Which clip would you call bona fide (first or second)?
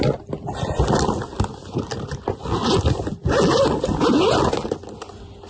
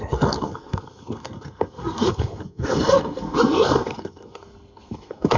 first